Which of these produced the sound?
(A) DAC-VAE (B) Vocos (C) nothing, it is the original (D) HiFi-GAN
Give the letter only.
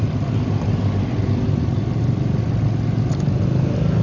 C